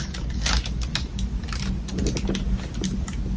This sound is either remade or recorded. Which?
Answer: recorded